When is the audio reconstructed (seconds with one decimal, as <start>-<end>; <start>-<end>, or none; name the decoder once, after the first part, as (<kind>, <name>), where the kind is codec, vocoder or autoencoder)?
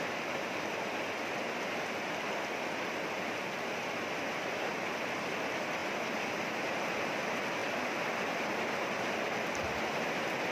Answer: none